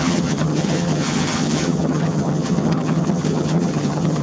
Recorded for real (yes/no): no